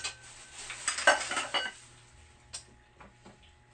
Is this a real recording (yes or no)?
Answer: yes